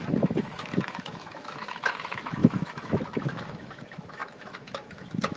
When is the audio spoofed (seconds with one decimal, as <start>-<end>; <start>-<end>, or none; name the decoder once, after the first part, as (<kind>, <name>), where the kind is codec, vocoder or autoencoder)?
0.0-5.4 (autoencoder, DAC-VAE)